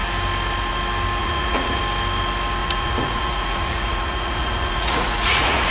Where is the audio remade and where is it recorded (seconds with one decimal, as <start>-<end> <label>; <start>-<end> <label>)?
0.0-1.2 recorded; 1.2-1.8 remade; 1.8-2.6 recorded; 2.6-5.7 remade